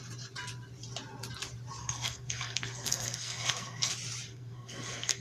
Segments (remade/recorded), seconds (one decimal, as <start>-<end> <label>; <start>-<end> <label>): 0.0-1.8 recorded; 1.8-3.9 remade; 3.9-4.3 recorded; 4.3-5.2 remade